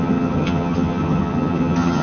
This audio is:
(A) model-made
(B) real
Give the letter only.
A